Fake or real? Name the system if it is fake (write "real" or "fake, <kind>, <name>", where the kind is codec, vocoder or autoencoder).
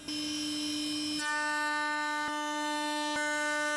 real